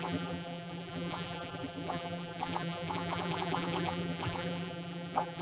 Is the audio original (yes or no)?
no